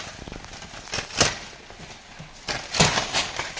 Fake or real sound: real